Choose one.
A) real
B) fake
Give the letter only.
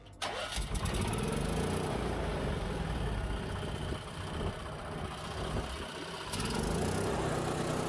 A